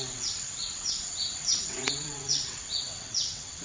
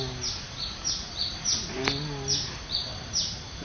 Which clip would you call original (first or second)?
second